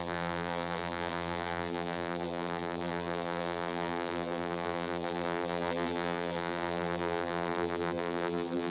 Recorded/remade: remade